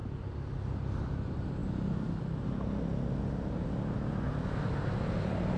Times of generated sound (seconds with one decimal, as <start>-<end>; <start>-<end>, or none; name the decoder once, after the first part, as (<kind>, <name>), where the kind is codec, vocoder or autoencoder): none